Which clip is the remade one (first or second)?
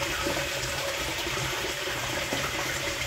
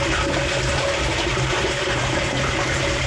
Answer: first